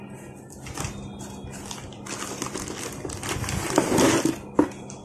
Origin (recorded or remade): recorded